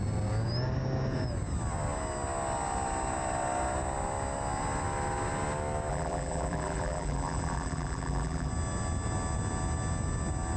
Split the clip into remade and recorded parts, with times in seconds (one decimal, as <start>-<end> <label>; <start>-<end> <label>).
0.0-5.9 recorded; 5.9-8.5 remade; 8.5-10.6 recorded